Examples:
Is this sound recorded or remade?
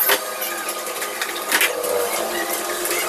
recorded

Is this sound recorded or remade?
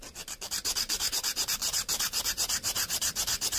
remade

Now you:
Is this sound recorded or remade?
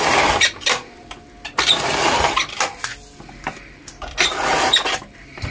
remade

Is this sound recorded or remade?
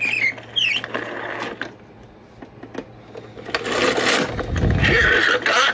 recorded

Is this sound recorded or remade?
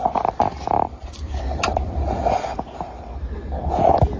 recorded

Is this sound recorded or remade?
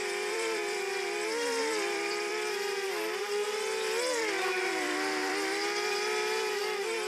remade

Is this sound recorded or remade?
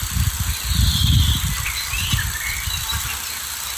remade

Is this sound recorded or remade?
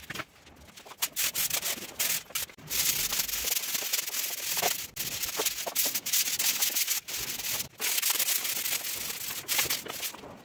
recorded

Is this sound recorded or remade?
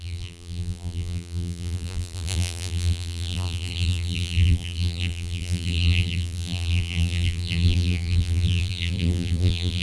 remade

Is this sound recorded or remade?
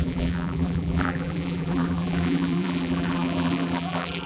remade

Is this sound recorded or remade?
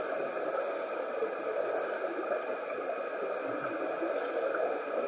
recorded